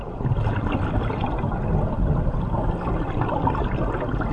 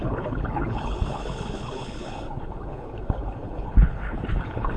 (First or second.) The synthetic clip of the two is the second